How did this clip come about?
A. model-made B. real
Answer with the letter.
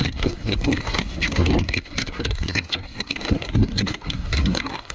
A